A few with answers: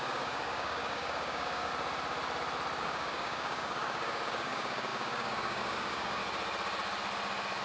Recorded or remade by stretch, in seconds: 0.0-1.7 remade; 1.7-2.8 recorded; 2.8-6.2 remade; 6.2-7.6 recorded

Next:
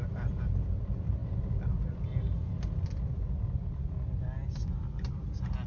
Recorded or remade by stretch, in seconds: 0.0-5.7 recorded

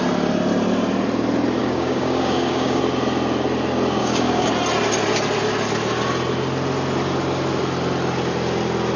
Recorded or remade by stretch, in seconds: 0.0-1.6 recorded; 1.6-2.8 remade; 2.8-4.0 recorded; 4.0-4.5 remade; 4.5-9.0 recorded

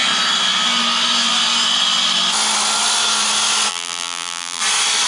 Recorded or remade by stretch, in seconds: 0.0-3.7 recorded; 3.7-4.6 remade; 4.6-5.1 recorded

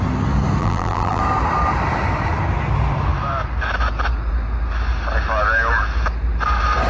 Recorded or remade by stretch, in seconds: 0.0-0.6 recorded; 0.6-1.2 remade; 1.2-6.9 recorded